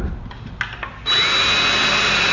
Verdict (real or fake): real